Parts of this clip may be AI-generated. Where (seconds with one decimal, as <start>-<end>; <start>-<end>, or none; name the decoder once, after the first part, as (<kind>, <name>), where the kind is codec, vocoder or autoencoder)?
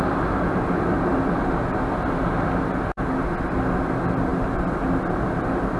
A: none